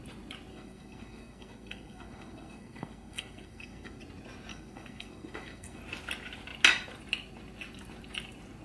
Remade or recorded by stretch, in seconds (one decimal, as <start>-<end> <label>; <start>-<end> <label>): 0.0-0.5 recorded; 0.5-4.0 remade; 4.0-4.5 recorded; 4.5-5.8 remade; 5.8-8.6 recorded